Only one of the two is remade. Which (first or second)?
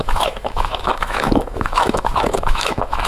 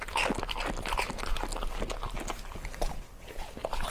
first